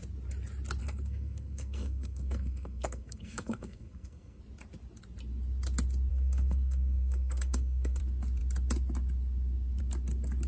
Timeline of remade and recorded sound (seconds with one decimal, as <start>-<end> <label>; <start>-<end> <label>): 0.0-0.8 recorded; 0.8-4.4 remade; 4.4-6.1 recorded; 6.1-8.0 remade; 8.0-10.5 recorded